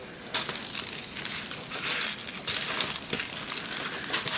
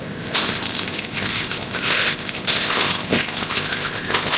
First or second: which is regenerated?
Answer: second